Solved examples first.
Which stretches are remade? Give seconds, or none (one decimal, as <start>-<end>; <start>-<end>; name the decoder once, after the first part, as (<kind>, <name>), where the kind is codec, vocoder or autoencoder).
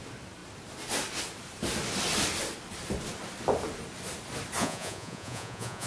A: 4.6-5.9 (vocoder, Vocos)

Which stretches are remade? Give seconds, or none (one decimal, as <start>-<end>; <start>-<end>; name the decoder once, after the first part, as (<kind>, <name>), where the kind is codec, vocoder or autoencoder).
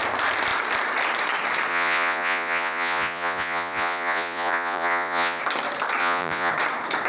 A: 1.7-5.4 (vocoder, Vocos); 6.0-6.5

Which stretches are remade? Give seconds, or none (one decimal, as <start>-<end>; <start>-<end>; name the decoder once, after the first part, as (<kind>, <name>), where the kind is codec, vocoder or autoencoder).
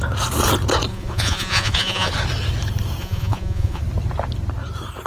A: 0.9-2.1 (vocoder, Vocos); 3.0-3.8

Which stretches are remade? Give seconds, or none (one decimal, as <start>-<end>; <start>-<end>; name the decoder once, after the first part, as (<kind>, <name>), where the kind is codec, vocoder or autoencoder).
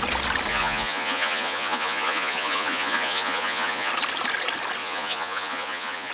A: 0.5-3.9 (vocoder, Vocos); 4.8-6.1